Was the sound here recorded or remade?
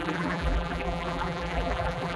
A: remade